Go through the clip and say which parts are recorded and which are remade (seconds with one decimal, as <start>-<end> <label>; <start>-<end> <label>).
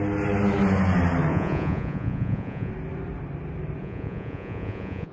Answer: 0.0-1.3 recorded; 1.3-2.7 remade; 2.7-3.8 recorded; 3.8-5.1 remade